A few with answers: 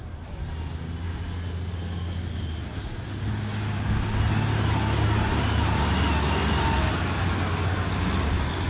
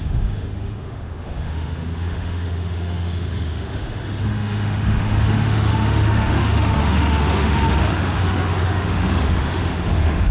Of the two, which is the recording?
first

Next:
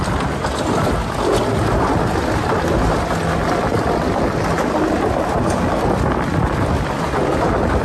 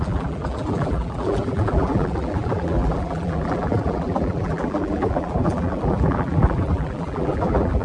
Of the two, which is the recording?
first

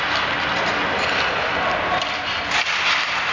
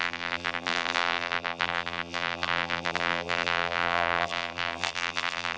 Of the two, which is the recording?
first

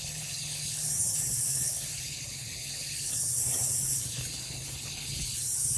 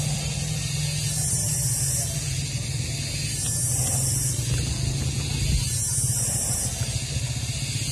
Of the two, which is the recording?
second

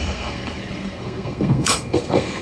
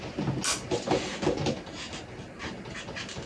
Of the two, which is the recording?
second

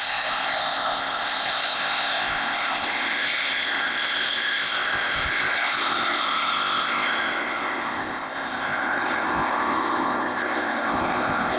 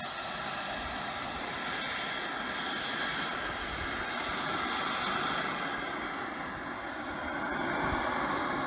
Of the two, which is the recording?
second